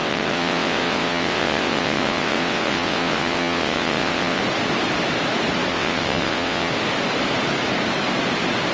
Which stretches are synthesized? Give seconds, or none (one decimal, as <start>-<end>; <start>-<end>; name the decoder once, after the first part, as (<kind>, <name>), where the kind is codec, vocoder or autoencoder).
0.0-4.4 (vocoder, WaveNeXt); 5.7-6.7